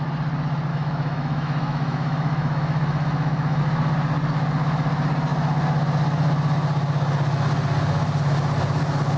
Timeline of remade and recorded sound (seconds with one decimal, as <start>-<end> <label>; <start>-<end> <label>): 0.0-0.7 recorded; 0.7-3.6 remade; 3.6-9.2 recorded